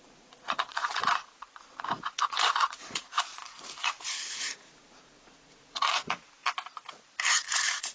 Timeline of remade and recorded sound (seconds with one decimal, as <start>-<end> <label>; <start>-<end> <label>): 0.0-6.4 remade; 6.4-7.2 recorded; 7.2-7.9 remade